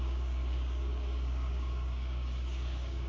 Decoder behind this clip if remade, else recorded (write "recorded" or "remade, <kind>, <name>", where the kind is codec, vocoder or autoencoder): remade, codec, DAC